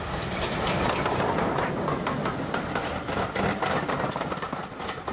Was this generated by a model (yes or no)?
no